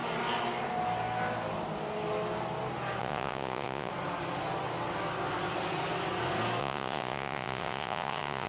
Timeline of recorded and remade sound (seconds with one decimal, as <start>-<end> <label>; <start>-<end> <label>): 0.0-3.0 recorded; 3.0-3.9 remade; 3.9-6.6 recorded; 6.6-8.5 remade